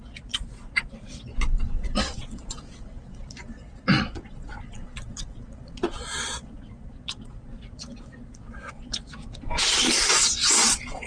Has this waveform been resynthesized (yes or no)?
yes